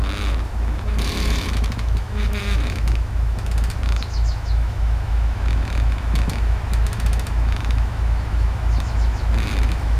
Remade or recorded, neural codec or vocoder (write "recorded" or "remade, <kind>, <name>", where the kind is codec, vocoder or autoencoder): remade, autoencoder, DAC-VAE